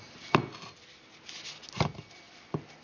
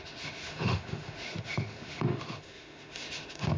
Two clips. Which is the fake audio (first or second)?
second